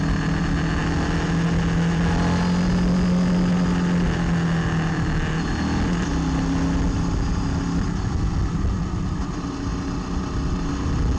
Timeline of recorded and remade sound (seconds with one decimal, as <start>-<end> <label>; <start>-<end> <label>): 0.0-11.2 recorded